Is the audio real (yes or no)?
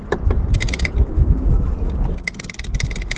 yes